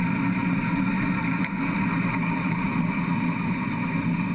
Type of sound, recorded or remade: recorded